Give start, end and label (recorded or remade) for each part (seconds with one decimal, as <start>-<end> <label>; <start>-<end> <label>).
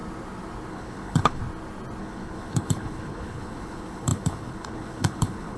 0.0-0.7 recorded; 0.7-1.4 remade; 1.4-2.0 recorded; 2.0-5.6 remade